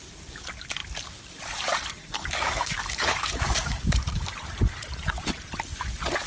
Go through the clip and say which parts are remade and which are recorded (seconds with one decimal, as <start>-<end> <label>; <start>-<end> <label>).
0.0-2.0 recorded; 2.0-4.3 remade; 4.3-6.3 recorded